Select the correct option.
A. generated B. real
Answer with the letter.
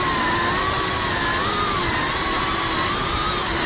B